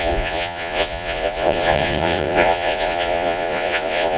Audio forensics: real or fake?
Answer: fake